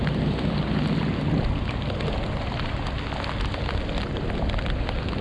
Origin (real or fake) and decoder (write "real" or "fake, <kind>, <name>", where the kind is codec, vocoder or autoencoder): real